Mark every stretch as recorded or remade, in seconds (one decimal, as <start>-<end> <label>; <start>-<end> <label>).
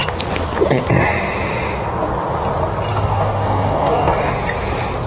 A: 0.0-2.9 recorded; 2.9-4.3 remade; 4.3-5.1 recorded